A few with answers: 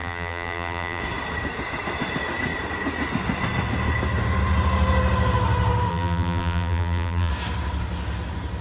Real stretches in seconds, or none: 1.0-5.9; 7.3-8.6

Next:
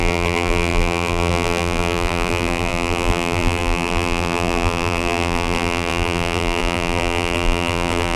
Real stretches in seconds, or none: none